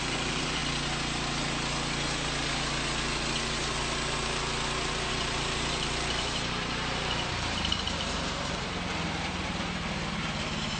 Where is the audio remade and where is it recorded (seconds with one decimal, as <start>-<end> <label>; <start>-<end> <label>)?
0.0-0.6 remade; 0.6-5.1 recorded; 5.1-10.8 remade